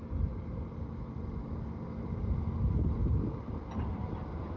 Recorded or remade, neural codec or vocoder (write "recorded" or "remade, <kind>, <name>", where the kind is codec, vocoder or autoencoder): recorded